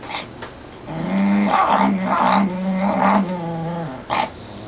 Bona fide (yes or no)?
yes